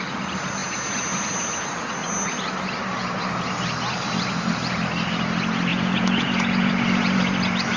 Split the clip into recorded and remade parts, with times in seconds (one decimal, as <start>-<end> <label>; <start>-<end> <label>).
0.0-5.7 recorded; 5.7-6.7 remade; 6.7-7.8 recorded